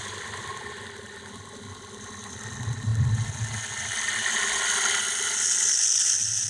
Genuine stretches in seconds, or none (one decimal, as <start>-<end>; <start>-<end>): 0.0-6.5